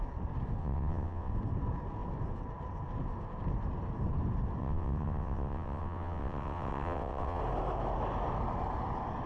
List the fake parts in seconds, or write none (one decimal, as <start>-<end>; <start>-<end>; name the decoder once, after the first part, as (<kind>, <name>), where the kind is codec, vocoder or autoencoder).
0.6-1.3 (vocoder, WaveNeXt); 4.6-7.4